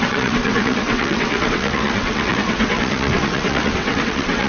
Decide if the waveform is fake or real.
fake